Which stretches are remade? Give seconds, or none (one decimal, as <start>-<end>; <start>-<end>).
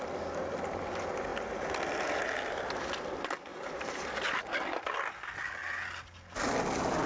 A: 3.5-4.4